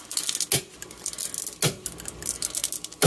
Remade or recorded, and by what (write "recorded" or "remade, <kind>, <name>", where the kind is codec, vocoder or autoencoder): recorded